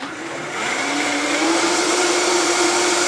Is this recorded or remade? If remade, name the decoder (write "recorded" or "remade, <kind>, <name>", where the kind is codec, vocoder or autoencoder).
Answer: remade, vocoder, BigVGAN v2